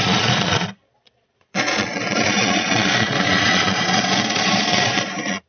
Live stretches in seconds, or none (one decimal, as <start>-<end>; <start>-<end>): none

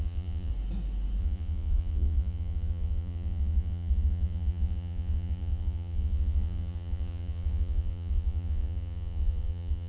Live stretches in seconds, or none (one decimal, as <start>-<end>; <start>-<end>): 0.5-1.2

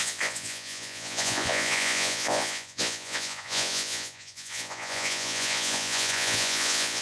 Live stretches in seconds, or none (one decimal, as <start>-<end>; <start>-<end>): none

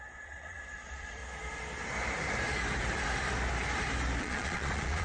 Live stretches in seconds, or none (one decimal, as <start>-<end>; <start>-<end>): 1.2-4.2

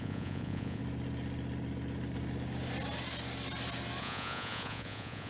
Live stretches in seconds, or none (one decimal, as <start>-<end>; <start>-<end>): 0.8-4.0

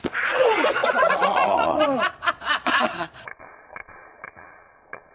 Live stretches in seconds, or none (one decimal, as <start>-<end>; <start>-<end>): none

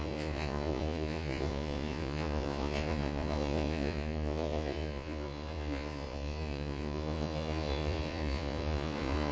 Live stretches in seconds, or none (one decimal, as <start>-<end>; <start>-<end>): none

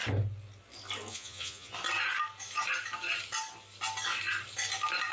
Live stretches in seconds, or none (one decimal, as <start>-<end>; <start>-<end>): 0.0-1.1; 1.7-5.1